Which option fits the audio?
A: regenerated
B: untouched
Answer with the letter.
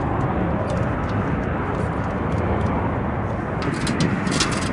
B